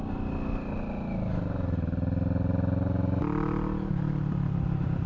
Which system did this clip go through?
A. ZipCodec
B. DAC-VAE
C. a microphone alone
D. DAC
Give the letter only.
C